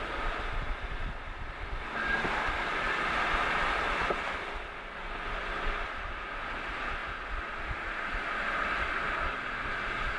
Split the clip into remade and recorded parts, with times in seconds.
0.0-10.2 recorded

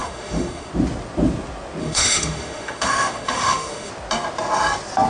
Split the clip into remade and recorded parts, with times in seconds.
0.0-0.7 remade; 0.7-1.8 recorded; 1.8-3.9 remade; 3.9-5.1 recorded

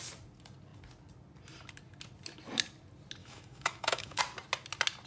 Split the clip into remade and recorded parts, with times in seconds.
0.0-3.2 recorded; 3.2-4.2 remade; 4.2-5.1 recorded

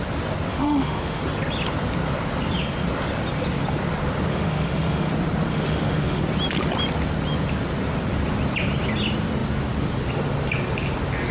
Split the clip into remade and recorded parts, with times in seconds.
0.0-0.5 recorded; 0.5-1.2 remade; 1.2-4.3 recorded; 4.3-5.1 remade; 5.1-5.5 recorded; 5.5-6.2 remade; 6.2-11.3 recorded